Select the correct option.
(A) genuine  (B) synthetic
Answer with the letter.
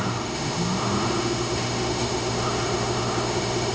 B